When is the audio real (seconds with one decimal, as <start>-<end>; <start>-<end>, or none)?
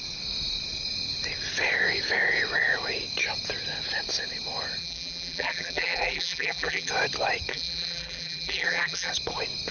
0.0-4.8; 6.9-7.5; 9.1-9.7